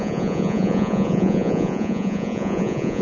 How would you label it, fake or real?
fake